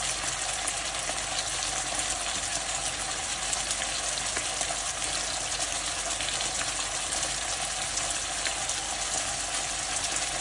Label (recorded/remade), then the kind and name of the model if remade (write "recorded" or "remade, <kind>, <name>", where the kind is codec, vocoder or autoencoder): recorded